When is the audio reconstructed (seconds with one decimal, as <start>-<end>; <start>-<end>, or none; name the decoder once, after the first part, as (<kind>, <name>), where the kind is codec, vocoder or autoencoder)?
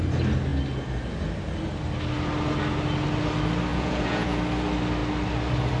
3.7-4.4 (vocoder, Vocos)